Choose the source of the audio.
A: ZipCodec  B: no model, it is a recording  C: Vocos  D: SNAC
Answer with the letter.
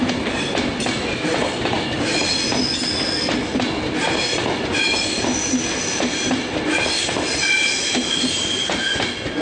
B